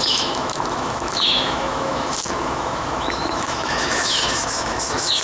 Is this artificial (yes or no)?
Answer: yes